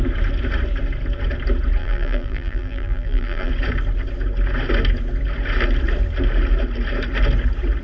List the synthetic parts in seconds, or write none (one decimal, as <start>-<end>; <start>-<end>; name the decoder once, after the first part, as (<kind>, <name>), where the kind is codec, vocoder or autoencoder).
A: 1.8-3.5 (vocoder, BigVGAN v2)